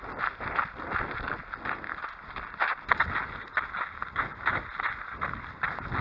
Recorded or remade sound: recorded